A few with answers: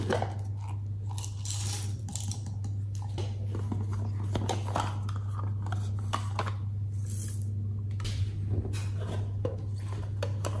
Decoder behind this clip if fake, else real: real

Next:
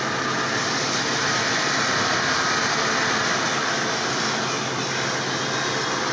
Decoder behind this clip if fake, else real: real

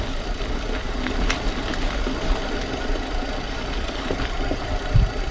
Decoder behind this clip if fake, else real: real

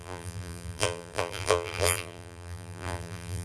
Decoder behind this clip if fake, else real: fake, vocoder, BigVGAN v2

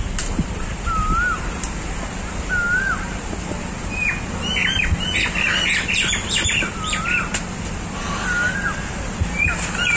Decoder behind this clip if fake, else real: real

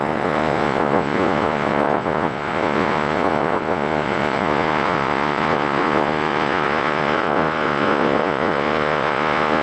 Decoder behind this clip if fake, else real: fake, vocoder, Vocos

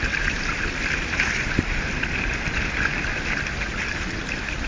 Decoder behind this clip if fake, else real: fake, vocoder, BigVGAN v2